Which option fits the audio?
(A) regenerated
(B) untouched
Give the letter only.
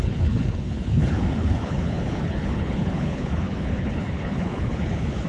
A